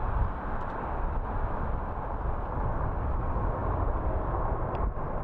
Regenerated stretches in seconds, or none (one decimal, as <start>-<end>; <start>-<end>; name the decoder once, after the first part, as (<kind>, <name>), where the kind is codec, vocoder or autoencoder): none